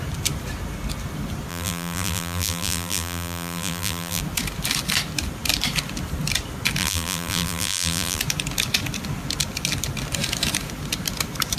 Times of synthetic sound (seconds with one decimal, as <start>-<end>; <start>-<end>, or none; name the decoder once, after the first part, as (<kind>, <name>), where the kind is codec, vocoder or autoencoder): 1.5-4.2 (vocoder, BigVGAN v2); 6.8-8.2